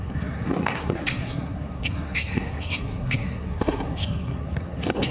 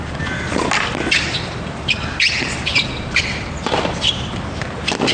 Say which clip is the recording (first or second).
second